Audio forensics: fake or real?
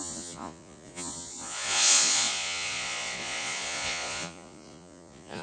fake